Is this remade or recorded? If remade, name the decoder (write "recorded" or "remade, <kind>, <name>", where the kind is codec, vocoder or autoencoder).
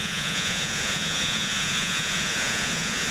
remade, vocoder, Vocos